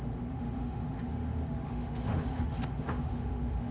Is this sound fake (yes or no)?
yes